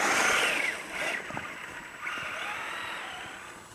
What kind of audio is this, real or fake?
real